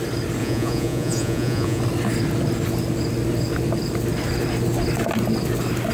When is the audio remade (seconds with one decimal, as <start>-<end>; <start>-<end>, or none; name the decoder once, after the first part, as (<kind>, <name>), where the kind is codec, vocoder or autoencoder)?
0.4-1.8 (vocoder, Vocos)